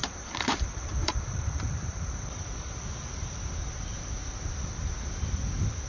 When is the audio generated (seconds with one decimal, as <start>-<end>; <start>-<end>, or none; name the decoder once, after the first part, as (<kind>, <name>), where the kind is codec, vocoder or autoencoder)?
0.0-2.2 (vocoder, BigVGAN v2)

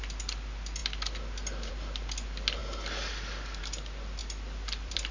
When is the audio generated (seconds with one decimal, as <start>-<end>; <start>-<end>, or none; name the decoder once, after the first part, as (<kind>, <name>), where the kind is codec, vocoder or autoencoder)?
4.2-5.1 (vocoder, BigVGAN v2)

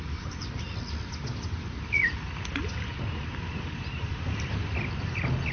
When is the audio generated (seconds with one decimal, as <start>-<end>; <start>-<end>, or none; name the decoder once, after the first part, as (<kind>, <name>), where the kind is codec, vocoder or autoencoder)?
2.9-3.7 (vocoder, BigVGAN v2)